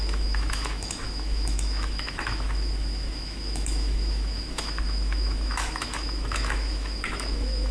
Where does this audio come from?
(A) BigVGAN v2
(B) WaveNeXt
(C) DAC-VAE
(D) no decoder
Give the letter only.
C